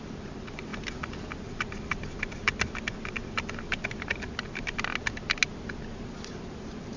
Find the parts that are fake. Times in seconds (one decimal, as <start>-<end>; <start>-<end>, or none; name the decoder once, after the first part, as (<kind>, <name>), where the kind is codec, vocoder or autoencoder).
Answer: none